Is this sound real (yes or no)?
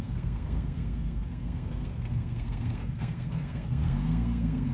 no